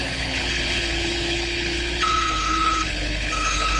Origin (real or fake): fake